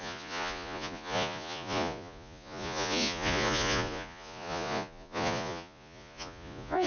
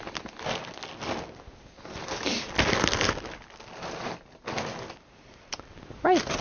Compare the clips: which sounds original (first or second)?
second